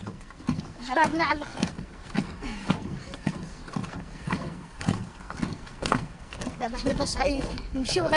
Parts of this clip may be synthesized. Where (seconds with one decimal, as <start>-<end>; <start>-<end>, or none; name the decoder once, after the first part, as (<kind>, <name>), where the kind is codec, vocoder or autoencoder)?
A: 0.0-8.2 (codec, SNAC)

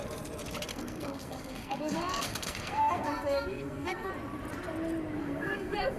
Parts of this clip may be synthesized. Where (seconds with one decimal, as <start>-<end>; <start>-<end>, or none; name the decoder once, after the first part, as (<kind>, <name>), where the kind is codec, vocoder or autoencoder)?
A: 0.7-4.1 (codec, SNAC); 5.2-6.0

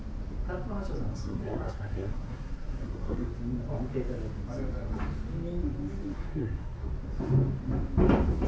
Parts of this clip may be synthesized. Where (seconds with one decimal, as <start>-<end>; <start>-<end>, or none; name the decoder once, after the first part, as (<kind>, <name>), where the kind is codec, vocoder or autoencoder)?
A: 1.1-3.3 (codec, SNAC); 6.1-6.9

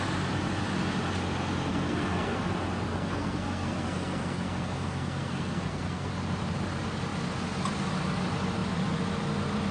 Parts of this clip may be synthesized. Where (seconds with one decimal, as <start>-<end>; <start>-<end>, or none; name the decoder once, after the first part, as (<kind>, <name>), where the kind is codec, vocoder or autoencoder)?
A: 1.7-2.4 (codec, SNAC); 2.9-6.1

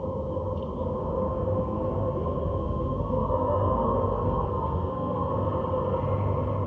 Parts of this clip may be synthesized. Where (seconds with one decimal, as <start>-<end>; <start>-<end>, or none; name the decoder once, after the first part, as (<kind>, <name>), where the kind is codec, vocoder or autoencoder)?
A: 1.3-5.3 (codec, SNAC)

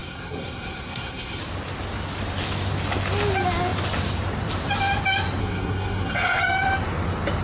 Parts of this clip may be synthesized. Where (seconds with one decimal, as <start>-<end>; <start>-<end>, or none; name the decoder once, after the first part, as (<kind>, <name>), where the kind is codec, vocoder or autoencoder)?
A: 0.0-1.4 (codec, SNAC); 5.4-6.4

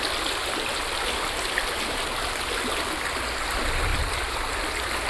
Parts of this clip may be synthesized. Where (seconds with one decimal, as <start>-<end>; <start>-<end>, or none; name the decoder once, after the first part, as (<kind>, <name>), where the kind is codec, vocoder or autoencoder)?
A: none